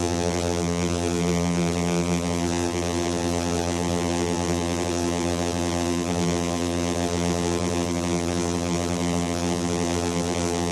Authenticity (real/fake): fake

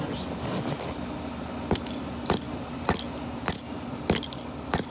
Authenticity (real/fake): real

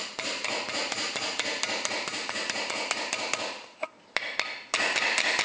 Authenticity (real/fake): real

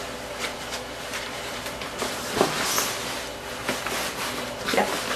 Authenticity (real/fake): real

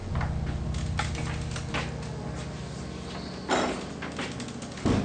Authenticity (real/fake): real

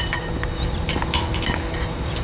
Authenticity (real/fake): real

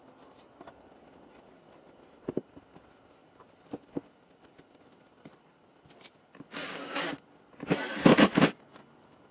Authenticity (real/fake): real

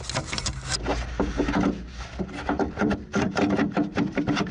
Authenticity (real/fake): real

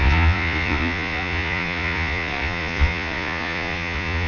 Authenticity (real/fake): fake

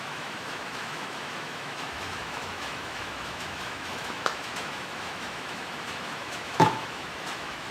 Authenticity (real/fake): fake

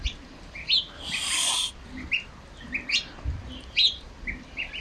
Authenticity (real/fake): real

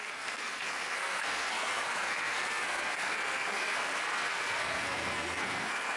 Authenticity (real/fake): fake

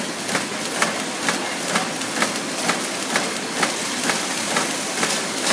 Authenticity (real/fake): real